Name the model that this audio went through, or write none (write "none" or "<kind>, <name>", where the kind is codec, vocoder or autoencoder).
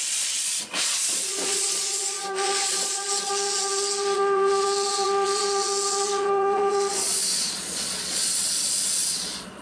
vocoder, Vocos